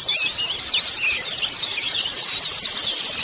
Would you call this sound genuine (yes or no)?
yes